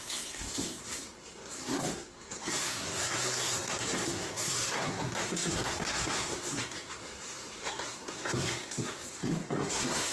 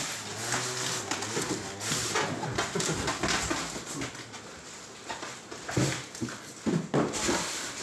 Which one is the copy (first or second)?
first